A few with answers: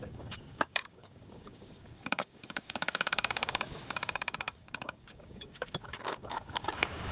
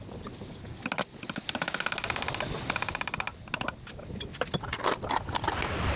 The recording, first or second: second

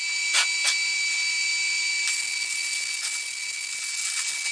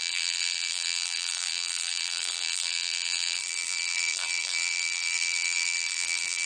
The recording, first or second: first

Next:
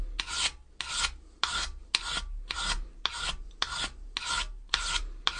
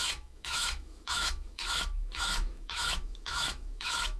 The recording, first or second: first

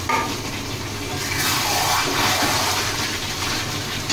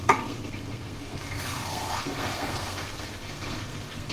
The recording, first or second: first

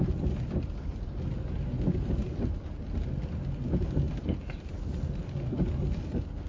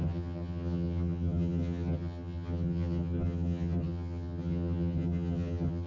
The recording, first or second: first